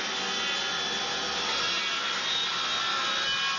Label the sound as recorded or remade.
recorded